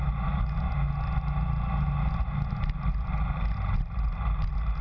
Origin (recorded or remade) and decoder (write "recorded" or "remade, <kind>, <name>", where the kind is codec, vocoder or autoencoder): recorded